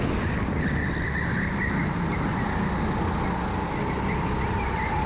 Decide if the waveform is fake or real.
real